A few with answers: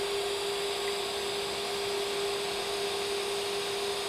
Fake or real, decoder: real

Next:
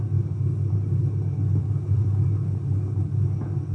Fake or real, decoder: real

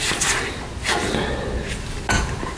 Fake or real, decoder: real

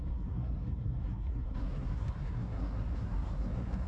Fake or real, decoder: fake, codec, SNAC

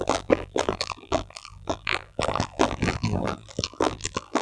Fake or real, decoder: fake, vocoder, BigVGAN v2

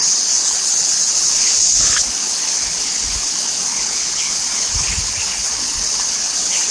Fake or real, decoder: fake, codec, HILCodec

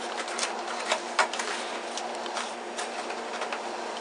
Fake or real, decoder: real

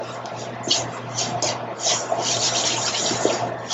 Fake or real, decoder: real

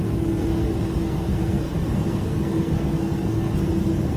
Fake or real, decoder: fake, codec, SNAC